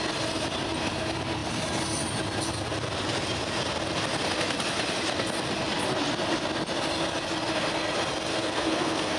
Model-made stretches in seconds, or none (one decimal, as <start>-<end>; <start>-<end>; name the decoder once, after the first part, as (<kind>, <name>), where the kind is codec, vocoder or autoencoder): 8.3-9.2 (codec, SNAC)